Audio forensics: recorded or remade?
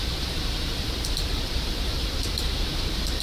remade